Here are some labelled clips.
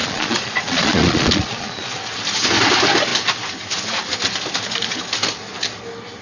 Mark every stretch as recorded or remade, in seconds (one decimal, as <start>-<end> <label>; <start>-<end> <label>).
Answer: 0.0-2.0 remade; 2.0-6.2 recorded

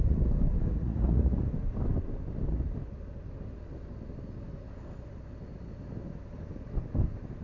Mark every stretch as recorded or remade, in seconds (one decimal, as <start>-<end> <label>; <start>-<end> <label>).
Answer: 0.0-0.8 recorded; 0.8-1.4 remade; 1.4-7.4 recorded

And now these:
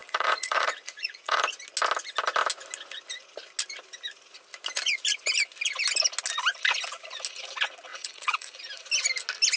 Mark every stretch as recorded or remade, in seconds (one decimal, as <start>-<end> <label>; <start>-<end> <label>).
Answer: 0.0-1.4 remade; 1.4-7.9 recorded; 7.9-8.6 remade; 8.6-9.6 recorded

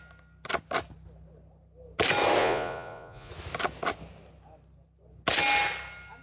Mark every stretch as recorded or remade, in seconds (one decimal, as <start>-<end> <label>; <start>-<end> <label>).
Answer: 0.0-2.4 recorded; 2.4-3.3 remade; 3.3-6.2 recorded

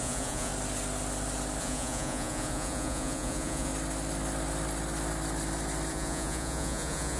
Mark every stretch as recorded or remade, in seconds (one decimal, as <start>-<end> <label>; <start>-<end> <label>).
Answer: 0.0-0.5 remade; 0.5-1.6 recorded; 1.6-3.7 remade; 3.7-5.9 recorded; 5.9-7.2 remade

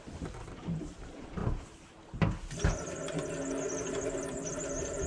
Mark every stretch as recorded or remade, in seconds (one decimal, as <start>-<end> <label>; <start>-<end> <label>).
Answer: 0.0-5.1 recorded

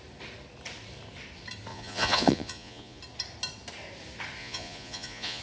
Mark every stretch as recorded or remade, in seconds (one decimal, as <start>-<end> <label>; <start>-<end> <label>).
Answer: 0.0-1.7 recorded; 1.7-3.0 remade; 3.0-4.4 recorded; 4.4-5.4 remade

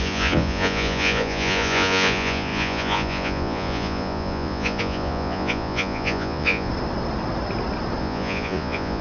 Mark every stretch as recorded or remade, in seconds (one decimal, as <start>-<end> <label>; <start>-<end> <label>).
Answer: 0.0-6.7 remade; 6.7-8.0 recorded; 8.0-9.0 remade